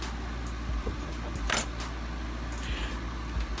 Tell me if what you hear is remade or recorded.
recorded